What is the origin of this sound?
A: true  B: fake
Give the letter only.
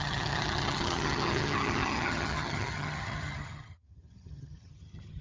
B